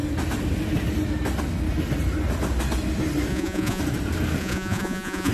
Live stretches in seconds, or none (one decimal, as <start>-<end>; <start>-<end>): 0.0-3.3; 3.8-4.4